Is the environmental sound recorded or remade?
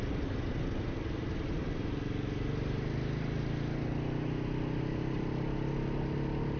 recorded